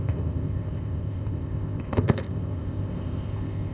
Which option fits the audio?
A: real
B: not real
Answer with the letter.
B